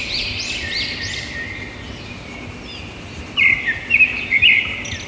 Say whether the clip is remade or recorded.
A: recorded